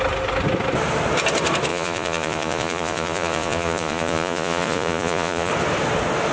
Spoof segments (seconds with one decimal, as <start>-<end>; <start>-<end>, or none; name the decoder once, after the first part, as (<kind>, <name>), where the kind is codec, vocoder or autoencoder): 1.7-5.5 (vocoder, Vocos)